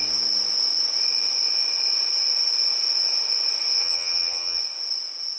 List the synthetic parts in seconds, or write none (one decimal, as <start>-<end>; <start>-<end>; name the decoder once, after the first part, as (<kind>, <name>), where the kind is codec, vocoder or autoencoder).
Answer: 3.8-4.6 (vocoder, HiFi-GAN)

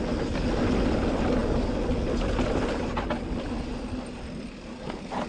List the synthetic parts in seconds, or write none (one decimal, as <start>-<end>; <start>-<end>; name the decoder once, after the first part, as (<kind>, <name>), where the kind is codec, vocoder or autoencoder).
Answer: none

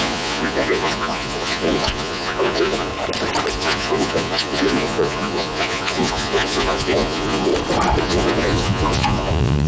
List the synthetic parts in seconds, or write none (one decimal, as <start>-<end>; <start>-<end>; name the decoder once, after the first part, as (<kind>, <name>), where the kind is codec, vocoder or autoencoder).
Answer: 0.0-2.9 (vocoder, Vocos); 3.5-7.5; 8.0-9.7

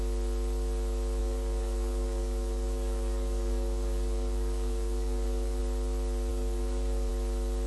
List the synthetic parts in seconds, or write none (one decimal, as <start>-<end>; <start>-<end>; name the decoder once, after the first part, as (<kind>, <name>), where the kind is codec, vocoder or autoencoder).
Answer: 1.2-5.6 (codec, DAC); 6.3-7.1

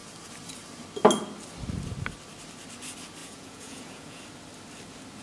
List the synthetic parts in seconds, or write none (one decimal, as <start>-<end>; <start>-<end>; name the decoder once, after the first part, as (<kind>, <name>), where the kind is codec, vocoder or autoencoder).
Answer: 3.2-4.2 (vocoder, Vocos)

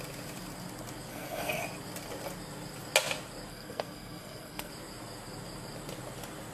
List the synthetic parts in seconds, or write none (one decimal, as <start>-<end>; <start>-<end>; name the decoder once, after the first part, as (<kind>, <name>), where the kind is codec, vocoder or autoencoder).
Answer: 1.1-1.6 (codec, SNAC); 3.5-4.7